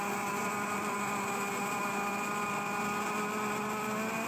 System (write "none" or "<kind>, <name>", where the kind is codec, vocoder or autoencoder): none